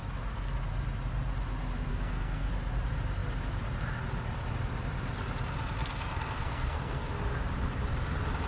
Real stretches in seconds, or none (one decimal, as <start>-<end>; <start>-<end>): 0.0-1.9; 2.5-5.8; 7.1-8.5